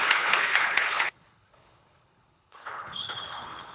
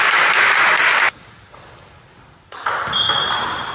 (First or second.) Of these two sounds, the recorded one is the second